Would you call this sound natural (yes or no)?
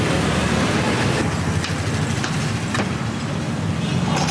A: yes